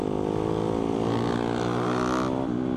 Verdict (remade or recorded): recorded